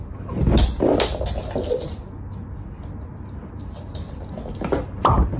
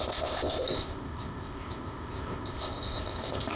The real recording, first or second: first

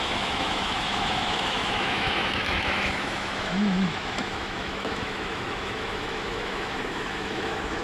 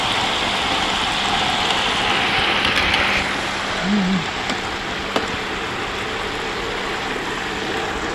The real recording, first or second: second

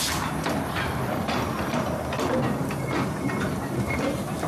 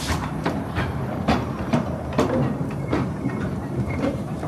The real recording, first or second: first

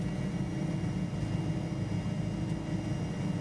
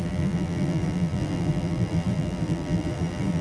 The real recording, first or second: first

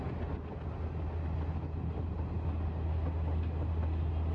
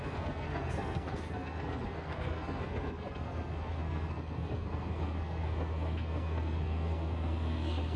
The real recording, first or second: first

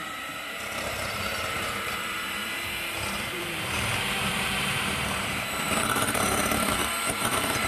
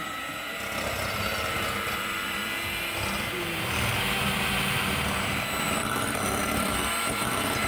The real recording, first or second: second